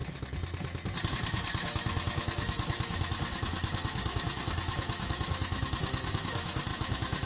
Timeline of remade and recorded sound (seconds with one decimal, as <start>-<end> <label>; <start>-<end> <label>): 0.0-1.1 recorded; 1.1-7.3 remade